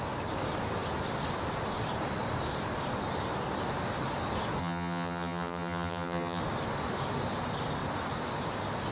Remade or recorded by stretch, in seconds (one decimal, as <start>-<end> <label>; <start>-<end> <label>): 0.0-4.6 recorded; 4.6-6.4 remade; 6.4-8.9 recorded